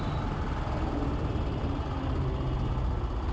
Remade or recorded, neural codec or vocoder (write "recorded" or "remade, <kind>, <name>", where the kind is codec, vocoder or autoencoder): recorded